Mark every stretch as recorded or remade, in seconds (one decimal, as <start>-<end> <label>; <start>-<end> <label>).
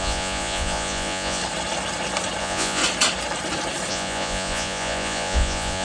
0.0-1.4 remade; 1.4-2.4 recorded; 2.4-2.8 remade; 2.8-3.9 recorded; 3.9-5.8 remade